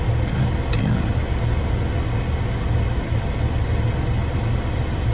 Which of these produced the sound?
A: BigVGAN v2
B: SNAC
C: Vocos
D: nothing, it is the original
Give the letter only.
D